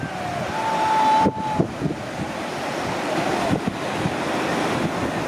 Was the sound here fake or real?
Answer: real